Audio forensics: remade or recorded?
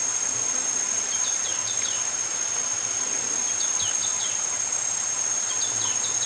recorded